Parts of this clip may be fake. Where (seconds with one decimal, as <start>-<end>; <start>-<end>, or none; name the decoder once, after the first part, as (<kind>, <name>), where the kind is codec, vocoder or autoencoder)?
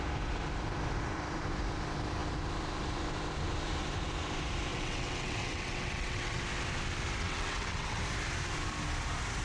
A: 4.7-6.4 (vocoder, WaveNeXt); 7.2-8.0